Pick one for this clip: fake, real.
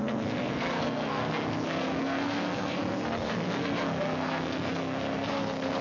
fake